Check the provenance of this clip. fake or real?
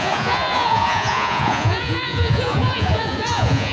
fake